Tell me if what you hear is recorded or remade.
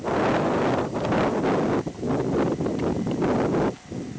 recorded